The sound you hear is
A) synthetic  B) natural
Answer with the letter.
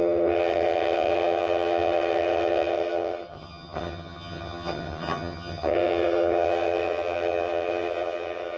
A